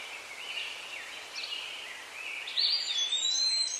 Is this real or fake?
real